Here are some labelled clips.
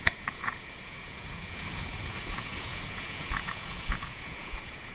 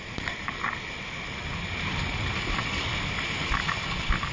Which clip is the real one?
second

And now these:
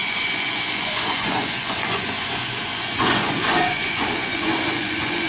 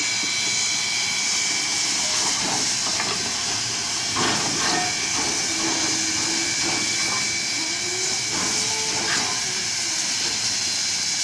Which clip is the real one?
second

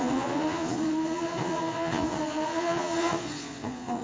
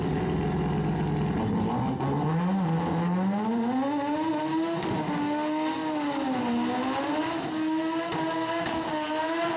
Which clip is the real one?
second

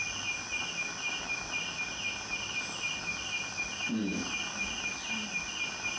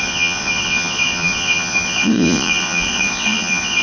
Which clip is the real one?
first